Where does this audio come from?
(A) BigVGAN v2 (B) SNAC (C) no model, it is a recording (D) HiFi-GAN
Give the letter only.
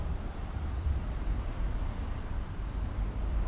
A